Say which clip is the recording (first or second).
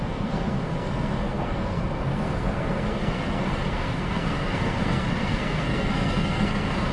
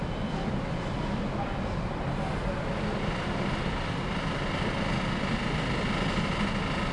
second